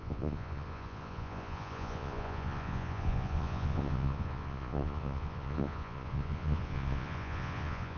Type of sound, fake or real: fake